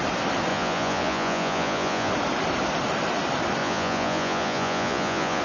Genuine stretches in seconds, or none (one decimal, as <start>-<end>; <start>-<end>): 0.0-0.5; 2.1-3.6